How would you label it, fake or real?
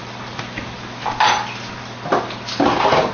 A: real